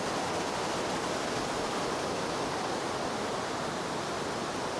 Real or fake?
real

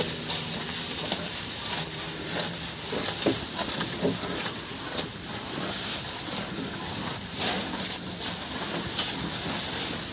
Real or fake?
real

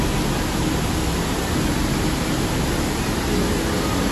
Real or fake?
real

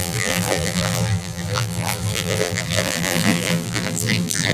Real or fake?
fake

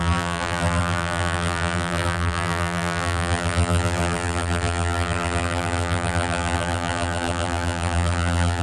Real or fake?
fake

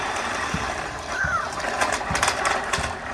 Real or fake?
fake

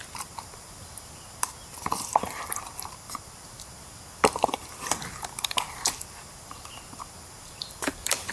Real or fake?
real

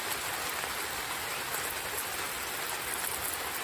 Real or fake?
real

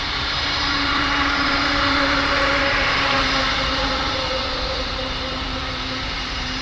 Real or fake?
fake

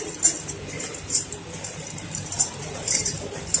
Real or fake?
fake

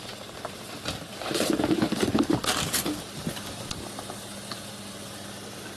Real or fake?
real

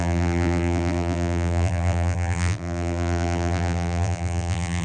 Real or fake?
fake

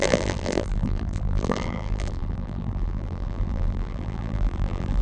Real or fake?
fake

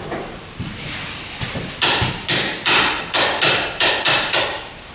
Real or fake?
real